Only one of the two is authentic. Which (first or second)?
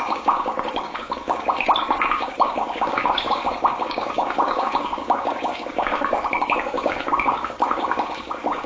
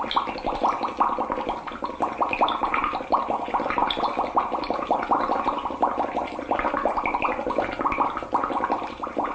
second